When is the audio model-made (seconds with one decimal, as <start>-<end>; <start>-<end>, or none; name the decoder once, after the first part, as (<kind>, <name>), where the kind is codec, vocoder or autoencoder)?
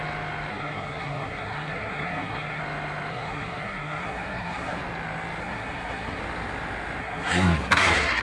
0.5-2.6 (codec, SNAC); 3.1-4.8; 5.4-6.2; 7.0-8.2